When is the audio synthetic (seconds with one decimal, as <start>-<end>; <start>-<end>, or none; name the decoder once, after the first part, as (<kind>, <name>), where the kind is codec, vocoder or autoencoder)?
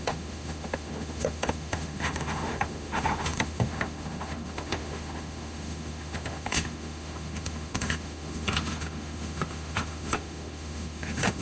0.0-11.4 (autoencoder, DAC-VAE)